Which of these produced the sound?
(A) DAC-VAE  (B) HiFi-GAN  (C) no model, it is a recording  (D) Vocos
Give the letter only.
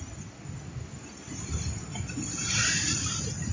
C